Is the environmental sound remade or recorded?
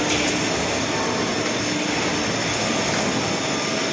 recorded